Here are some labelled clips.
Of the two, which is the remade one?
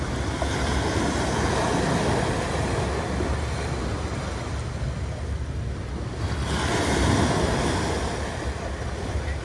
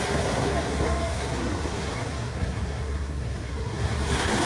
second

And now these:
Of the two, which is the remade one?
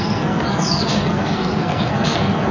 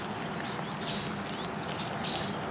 first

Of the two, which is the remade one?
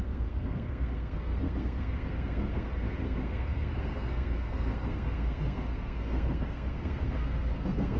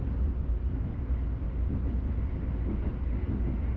first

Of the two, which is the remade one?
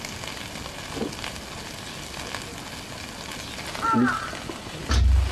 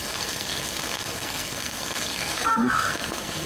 second